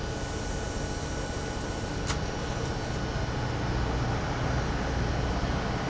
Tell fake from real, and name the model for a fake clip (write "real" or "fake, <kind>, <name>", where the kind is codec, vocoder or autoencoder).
real